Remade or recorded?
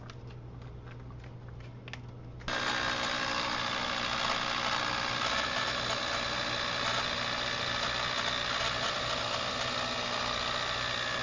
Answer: recorded